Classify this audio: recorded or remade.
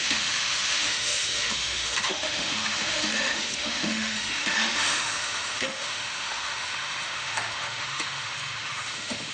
remade